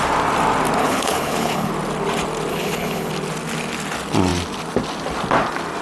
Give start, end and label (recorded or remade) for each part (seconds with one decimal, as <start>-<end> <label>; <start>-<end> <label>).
0.0-0.8 recorded; 0.8-1.7 remade; 1.7-2.5 recorded; 2.5-3.1 remade; 3.1-5.8 recorded